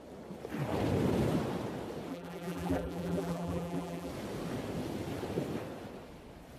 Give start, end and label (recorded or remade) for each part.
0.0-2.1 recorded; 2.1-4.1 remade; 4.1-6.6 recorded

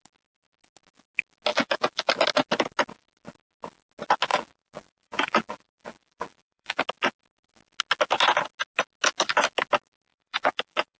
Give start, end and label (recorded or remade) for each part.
0.0-1.5 recorded; 1.5-2.1 remade; 2.1-4.3 recorded; 4.3-6.8 remade; 6.8-10.1 recorded; 10.1-11.0 remade

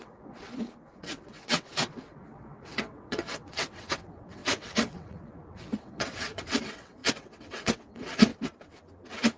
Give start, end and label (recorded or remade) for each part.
0.0-0.5 remade; 0.5-1.0 recorded; 1.0-8.3 remade; 8.3-9.4 recorded

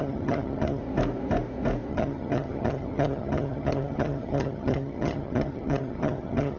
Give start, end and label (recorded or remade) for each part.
0.0-0.8 remade; 0.8-1.9 recorded; 1.9-6.6 remade

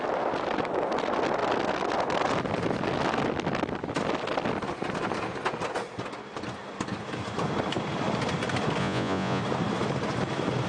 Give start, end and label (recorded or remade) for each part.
0.0-8.8 recorded; 8.8-9.4 remade; 9.4-10.7 recorded

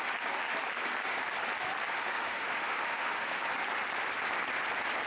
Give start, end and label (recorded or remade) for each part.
0.0-2.0 recorded; 2.0-3.4 remade; 3.4-5.1 recorded

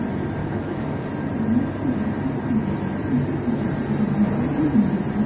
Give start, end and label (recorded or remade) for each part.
0.0-0.4 recorded; 0.4-1.1 remade; 1.1-5.3 recorded